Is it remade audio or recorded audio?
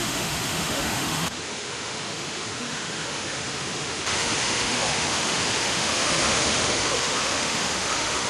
remade